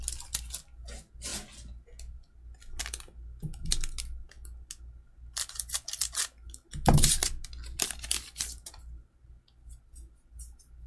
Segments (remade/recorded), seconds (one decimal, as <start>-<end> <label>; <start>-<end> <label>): 0.0-7.2 recorded; 7.2-9.2 remade; 9.2-10.9 recorded